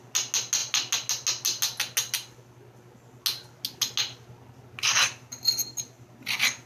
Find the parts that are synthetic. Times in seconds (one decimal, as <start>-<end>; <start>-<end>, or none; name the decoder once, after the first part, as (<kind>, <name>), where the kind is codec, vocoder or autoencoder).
none